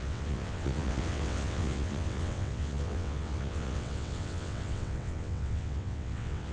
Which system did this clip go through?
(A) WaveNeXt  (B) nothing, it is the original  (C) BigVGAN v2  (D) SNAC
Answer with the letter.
A